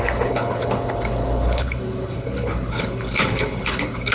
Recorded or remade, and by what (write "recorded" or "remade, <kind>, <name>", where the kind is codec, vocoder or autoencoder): remade, codec, HILCodec